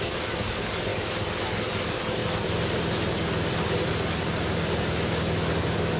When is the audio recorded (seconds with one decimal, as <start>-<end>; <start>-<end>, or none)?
2.2-5.6